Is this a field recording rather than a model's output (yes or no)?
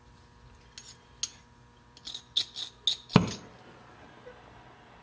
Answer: yes